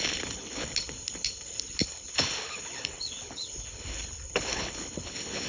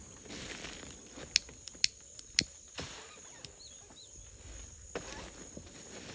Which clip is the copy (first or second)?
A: first